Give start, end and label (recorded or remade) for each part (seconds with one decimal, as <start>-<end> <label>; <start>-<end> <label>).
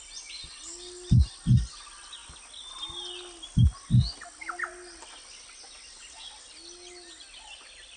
0.0-8.0 recorded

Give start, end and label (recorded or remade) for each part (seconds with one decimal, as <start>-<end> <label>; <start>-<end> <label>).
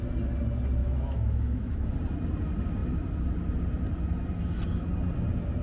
0.0-0.8 recorded; 0.8-1.9 remade; 1.9-5.6 recorded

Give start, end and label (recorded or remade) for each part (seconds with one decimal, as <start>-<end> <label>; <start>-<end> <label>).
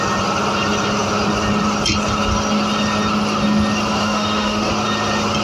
0.0-4.0 recorded; 4.0-4.7 remade; 4.7-5.4 recorded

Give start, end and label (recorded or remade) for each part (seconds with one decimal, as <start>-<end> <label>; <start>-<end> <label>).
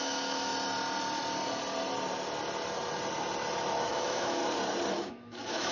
0.0-0.5 remade; 0.5-3.9 recorded; 3.9-4.4 remade; 4.4-4.9 recorded; 4.9-5.7 remade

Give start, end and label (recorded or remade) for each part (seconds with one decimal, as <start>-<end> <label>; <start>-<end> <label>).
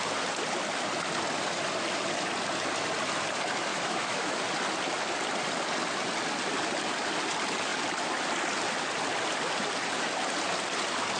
0.0-3.7 recorded; 3.7-4.4 remade; 4.4-11.2 recorded